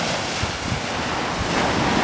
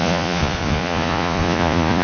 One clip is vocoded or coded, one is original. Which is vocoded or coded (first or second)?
second